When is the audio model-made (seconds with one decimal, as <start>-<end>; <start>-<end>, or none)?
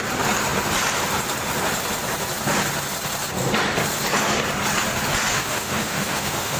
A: 5.3-6.6